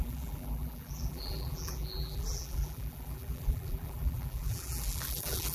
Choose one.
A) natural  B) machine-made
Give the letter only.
B